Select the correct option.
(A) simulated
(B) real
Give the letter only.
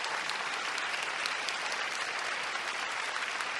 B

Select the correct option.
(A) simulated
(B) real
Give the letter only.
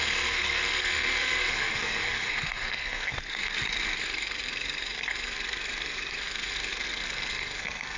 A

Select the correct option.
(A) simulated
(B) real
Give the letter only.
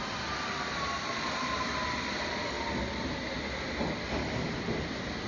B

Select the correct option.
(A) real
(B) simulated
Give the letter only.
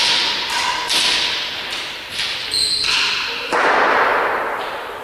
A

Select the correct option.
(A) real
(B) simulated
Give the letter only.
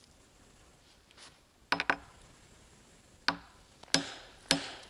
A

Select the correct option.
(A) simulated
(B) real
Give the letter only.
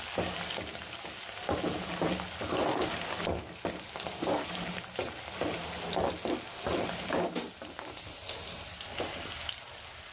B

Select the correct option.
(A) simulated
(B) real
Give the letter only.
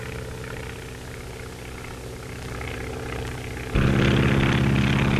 B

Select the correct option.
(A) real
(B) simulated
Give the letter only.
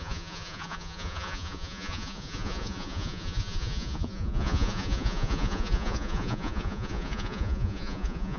B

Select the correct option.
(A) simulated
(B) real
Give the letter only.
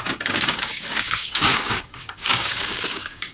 A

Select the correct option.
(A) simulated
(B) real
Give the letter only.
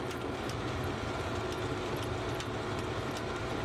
B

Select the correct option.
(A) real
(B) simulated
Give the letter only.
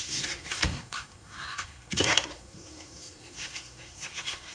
B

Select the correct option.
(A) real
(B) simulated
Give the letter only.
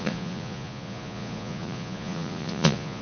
B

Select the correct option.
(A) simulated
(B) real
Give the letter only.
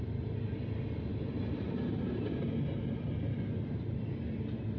B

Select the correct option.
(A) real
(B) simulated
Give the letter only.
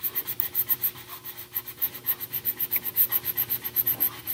A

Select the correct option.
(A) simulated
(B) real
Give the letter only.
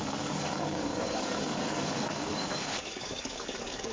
A